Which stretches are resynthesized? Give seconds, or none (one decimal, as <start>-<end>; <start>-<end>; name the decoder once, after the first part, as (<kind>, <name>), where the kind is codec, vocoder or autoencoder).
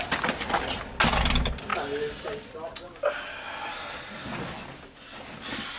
none